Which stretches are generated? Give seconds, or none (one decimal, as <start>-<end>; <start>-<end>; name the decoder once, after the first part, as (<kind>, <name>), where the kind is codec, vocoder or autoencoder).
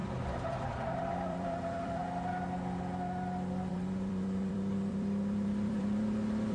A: 0.0-2.0 (vocoder, BigVGAN v2); 3.7-6.5